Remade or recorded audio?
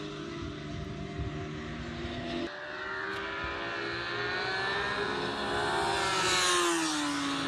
recorded